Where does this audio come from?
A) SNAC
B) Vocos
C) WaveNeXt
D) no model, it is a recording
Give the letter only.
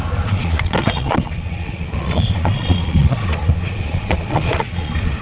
B